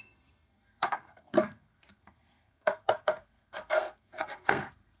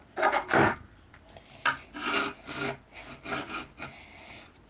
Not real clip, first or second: first